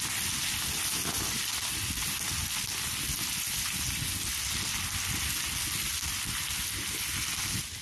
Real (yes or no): yes